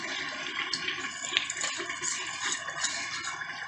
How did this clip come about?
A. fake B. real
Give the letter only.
B